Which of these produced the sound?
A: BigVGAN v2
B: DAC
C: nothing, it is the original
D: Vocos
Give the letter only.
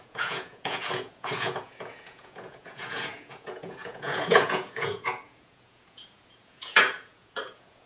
D